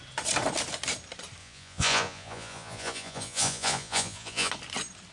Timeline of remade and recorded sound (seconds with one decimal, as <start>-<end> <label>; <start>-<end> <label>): 0.0-1.4 recorded; 1.4-4.5 remade; 4.5-5.1 recorded